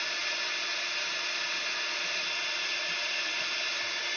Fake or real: real